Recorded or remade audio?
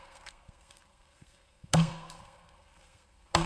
remade